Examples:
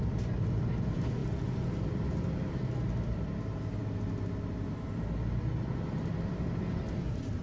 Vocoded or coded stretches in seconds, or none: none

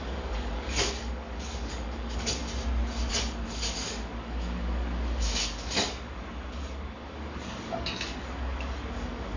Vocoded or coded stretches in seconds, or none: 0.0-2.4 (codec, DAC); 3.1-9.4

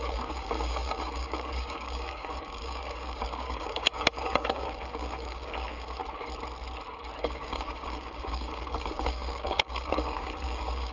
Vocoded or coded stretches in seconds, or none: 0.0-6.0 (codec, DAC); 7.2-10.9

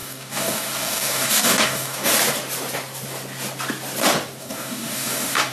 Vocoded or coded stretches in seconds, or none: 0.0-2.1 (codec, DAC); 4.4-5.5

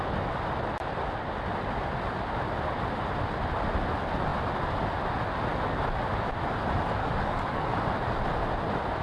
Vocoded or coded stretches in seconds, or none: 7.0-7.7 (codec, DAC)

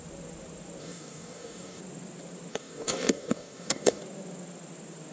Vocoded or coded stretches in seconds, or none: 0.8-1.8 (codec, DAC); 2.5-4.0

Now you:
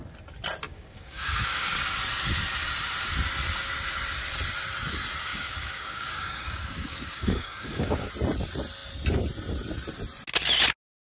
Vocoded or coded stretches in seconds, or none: 0.7-1.7 (codec, DAC); 5.3-8.1

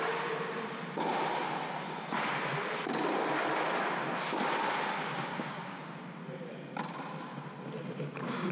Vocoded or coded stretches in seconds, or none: 5.3-6.0 (codec, DAC)